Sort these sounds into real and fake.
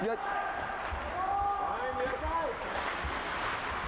real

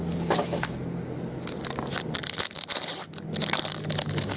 real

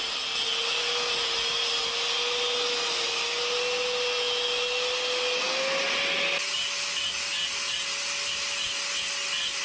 real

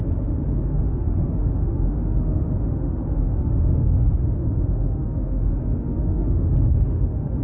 fake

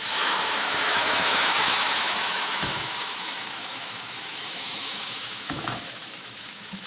fake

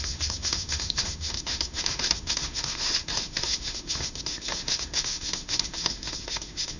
fake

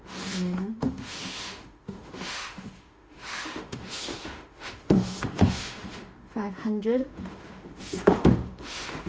fake